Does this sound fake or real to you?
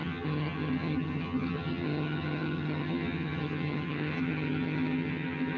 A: fake